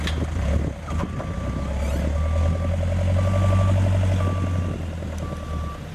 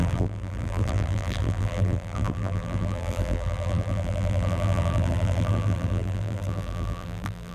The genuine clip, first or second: first